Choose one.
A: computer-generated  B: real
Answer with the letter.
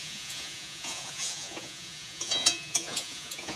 A